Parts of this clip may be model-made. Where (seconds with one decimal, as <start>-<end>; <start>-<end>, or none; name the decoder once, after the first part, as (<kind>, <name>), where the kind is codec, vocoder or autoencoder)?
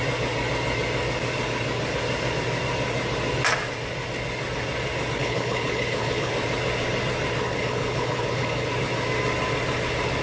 5.2-6.3 (codec, HILCodec); 7.4-8.7